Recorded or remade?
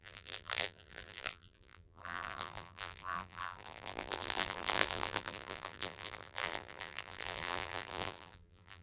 remade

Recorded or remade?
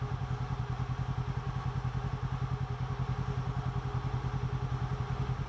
recorded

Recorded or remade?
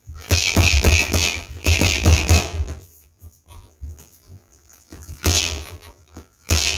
remade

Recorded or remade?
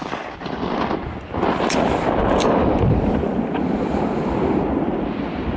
remade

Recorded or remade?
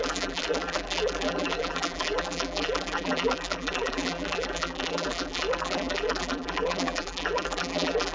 remade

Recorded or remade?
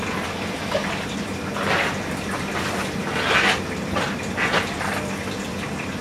recorded